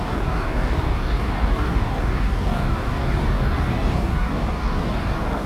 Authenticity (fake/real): fake